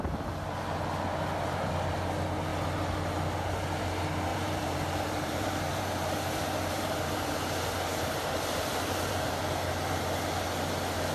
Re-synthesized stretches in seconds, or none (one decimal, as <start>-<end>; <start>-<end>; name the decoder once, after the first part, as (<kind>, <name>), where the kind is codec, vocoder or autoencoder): 4.3-7.3 (vocoder, BigVGAN v2); 7.9-9.4

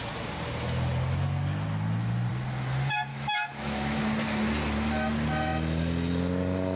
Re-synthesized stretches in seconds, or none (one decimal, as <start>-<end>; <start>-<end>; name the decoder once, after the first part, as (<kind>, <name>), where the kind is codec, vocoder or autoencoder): 3.1-4.0 (autoencoder, DAC-VAE)

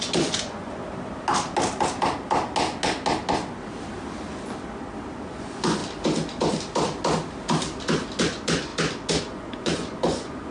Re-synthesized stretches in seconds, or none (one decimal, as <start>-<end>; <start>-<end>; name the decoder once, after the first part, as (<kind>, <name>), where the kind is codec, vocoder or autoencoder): 0.0-0.8 (vocoder, Vocos); 5.2-5.8; 8.2-8.7; 9.2-10.5

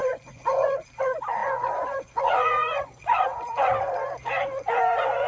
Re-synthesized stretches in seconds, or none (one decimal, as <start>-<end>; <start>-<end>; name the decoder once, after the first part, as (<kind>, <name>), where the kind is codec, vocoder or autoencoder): 0.0-3.7 (vocoder, Vocos); 4.4-5.3

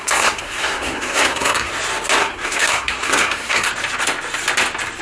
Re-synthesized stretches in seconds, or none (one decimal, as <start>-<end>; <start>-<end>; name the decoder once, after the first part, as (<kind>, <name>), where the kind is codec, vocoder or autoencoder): 0.0-1.7 (codec, SNAC); 2.2-3.7